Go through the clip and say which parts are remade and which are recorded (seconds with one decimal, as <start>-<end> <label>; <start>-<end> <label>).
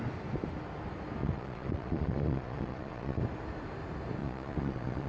0.0-1.2 recorded; 1.2-3.2 remade; 3.2-4.2 recorded; 4.2-5.1 remade